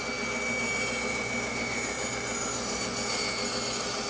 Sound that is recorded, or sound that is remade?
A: recorded